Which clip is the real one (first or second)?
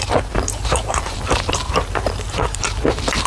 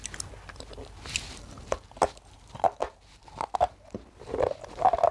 second